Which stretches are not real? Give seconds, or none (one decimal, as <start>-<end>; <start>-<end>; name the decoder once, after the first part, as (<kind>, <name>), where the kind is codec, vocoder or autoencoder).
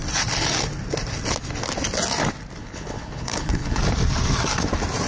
2.6-3.8 (codec, HILCodec)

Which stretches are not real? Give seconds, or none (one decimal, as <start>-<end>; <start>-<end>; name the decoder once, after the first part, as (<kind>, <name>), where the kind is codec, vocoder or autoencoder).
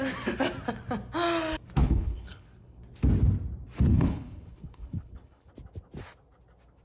1.8-2.8 (codec, HILCodec); 3.9-5.5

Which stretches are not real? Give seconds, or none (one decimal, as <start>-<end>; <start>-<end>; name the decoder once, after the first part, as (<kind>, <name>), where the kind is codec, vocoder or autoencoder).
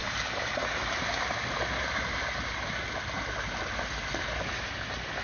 none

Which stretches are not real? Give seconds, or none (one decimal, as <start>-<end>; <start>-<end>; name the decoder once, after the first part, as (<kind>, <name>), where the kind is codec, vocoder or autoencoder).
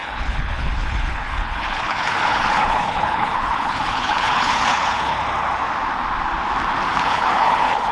0.0-5.1 (codec, HILCodec); 7.0-7.9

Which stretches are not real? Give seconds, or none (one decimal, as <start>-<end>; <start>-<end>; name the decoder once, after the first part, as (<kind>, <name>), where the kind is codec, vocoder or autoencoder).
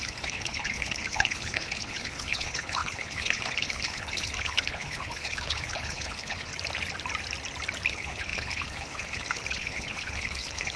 0.0-6.5 (codec, HILCodec); 7.9-10.8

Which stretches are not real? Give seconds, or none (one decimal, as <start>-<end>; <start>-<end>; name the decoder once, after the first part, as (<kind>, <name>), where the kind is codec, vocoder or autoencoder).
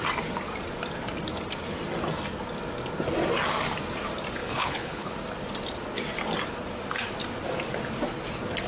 4.4-5.1 (codec, HILCodec)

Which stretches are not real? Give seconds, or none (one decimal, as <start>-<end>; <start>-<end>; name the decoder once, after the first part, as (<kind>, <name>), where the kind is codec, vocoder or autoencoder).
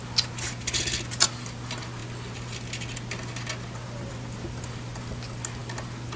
none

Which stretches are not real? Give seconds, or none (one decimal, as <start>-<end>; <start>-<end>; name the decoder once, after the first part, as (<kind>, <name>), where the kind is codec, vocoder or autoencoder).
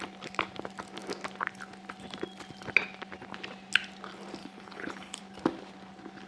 4.4-5.2 (codec, HILCodec)